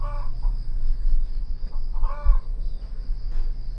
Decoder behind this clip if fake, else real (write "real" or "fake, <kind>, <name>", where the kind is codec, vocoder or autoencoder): real